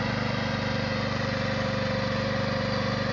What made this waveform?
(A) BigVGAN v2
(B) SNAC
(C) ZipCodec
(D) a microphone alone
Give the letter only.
D